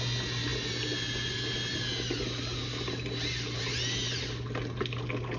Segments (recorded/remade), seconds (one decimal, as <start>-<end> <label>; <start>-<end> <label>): 0.0-5.4 recorded